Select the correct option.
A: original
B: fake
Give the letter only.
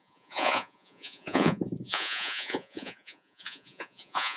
B